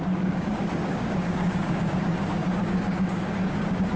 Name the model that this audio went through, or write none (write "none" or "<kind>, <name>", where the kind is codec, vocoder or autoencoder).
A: codec, DAC